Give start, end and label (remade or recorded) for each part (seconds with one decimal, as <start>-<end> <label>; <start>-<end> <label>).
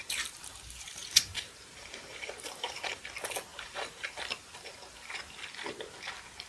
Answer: 0.0-3.0 remade; 3.0-3.5 recorded; 3.5-5.2 remade; 5.2-6.5 recorded